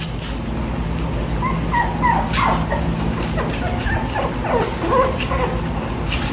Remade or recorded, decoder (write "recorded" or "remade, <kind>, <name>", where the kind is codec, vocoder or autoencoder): recorded